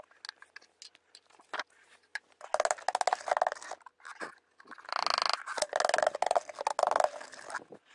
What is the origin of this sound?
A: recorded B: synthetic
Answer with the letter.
A